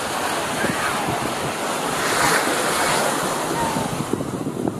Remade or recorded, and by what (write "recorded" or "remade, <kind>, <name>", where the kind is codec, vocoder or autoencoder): recorded